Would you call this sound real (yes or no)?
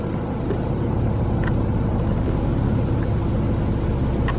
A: yes